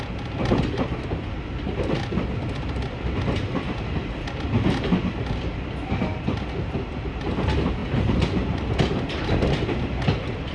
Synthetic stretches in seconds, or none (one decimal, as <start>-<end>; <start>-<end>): none

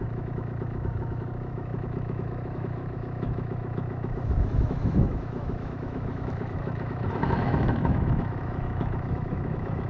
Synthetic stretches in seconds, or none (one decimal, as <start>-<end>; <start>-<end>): 0.0-9.9

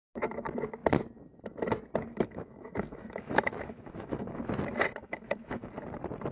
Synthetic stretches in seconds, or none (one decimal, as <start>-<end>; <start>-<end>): 2.1-4.4; 5.0-5.7

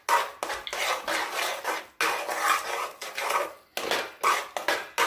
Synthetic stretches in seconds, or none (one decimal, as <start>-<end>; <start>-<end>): none